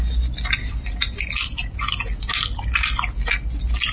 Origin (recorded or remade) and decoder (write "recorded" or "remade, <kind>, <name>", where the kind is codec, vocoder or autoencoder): recorded